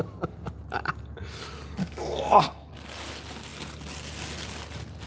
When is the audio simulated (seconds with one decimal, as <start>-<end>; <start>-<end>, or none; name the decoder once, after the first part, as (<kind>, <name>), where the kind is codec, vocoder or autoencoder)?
1.8-2.7 (codec, SNAC)